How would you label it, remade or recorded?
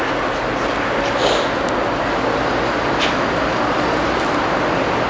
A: recorded